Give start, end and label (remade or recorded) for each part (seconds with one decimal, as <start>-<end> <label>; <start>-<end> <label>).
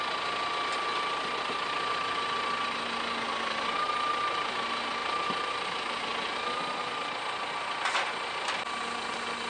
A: 0.0-9.5 recorded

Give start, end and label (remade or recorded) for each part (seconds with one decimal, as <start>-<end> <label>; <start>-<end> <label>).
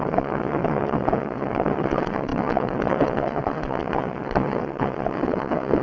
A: 0.0-5.8 remade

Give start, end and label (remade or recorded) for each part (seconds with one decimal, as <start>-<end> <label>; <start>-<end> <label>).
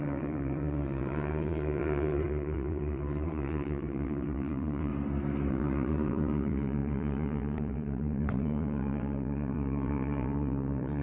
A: 0.0-4.9 remade; 4.9-5.5 recorded; 5.5-11.0 remade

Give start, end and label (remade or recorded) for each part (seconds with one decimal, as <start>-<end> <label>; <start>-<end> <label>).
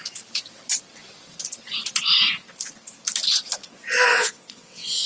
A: 0.0-4.1 recorded; 4.1-5.1 remade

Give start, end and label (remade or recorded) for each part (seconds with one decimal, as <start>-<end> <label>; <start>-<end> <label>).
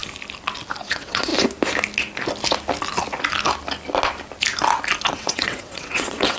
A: 0.0-0.8 recorded; 0.8-1.3 remade; 1.3-5.1 recorded; 5.1-6.4 remade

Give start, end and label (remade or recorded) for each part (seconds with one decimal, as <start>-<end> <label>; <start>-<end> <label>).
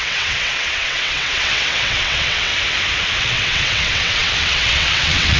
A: 0.0-2.5 remade; 2.5-3.2 recorded; 3.2-5.4 remade